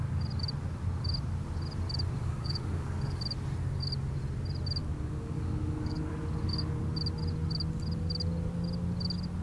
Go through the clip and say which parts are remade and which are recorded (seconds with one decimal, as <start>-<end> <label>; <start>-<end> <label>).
0.0-2.2 recorded; 2.2-3.2 remade; 3.2-4.8 recorded; 4.8-6.1 remade; 6.1-9.4 recorded